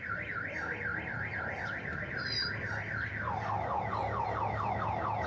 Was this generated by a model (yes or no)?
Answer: no